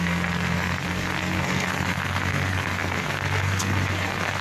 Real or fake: fake